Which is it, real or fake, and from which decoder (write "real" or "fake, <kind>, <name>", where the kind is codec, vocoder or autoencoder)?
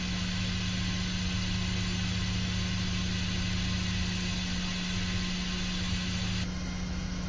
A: real